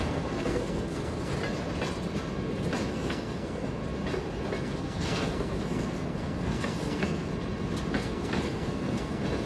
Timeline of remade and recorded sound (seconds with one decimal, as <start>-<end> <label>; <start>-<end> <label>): 0.0-1.3 remade; 1.3-2.9 recorded; 2.9-3.8 remade; 3.8-4.6 recorded; 4.6-7.3 remade; 7.3-7.8 recorded; 7.8-9.5 remade